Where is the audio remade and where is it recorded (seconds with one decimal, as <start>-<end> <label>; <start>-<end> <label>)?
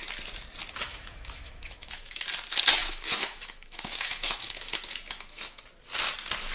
0.0-0.9 recorded; 0.9-2.2 remade; 2.2-2.8 recorded; 2.8-5.6 remade; 5.6-6.5 recorded